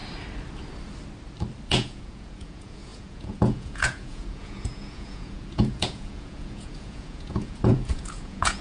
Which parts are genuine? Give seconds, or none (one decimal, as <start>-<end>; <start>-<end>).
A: 0.0-1.7